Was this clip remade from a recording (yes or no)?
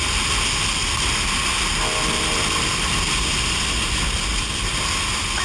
no